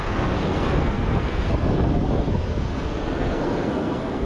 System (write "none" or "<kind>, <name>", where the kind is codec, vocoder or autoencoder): codec, SNAC